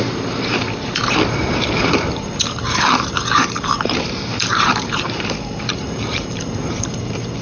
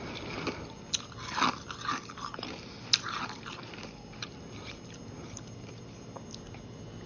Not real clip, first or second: first